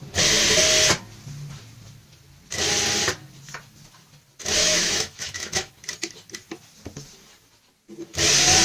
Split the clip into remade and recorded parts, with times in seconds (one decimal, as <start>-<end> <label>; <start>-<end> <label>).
0.0-4.6 recorded; 4.6-5.7 remade; 5.7-8.6 recorded